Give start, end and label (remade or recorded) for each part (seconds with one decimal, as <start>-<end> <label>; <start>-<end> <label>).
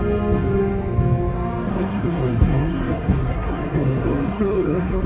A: 0.0-1.7 recorded; 1.7-5.1 remade